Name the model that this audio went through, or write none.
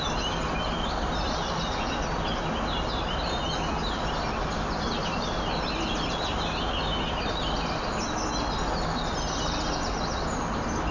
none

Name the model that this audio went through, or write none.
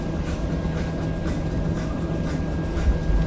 none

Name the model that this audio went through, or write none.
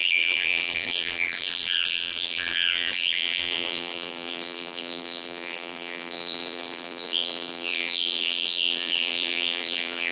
vocoder, BigVGAN v2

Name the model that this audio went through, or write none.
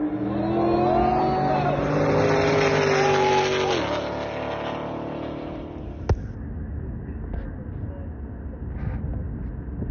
none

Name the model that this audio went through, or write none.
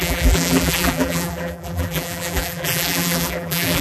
vocoder, BigVGAN v2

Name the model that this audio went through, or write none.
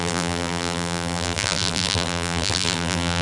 vocoder, BigVGAN v2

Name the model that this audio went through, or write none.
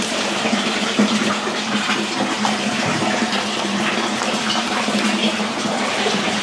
vocoder, BigVGAN v2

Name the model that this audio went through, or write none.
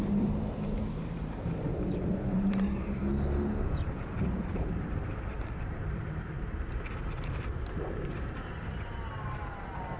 vocoder, BigVGAN v2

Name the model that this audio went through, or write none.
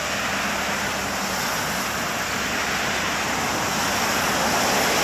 none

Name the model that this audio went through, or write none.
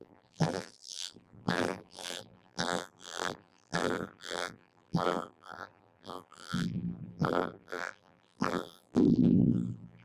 vocoder, BigVGAN v2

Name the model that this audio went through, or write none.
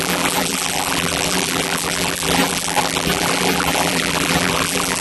vocoder, BigVGAN v2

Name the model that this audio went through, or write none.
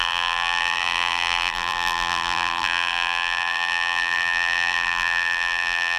vocoder, BigVGAN v2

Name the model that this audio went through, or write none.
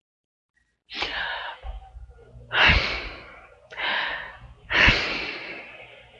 vocoder, BigVGAN v2